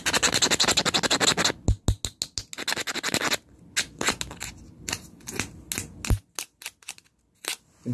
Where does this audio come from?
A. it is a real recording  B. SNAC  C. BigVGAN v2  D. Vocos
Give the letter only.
A